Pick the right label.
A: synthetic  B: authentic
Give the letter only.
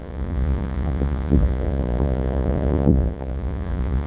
A